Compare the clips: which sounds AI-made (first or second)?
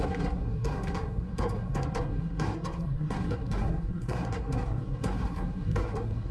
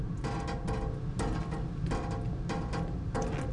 first